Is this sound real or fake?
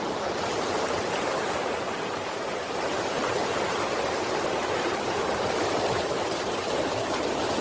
fake